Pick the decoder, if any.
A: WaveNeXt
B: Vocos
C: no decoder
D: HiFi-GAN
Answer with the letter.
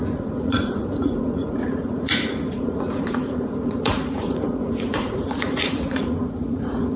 B